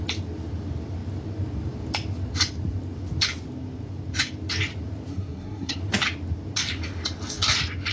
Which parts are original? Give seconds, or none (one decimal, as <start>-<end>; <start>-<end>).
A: 0.0-5.1; 5.8-7.9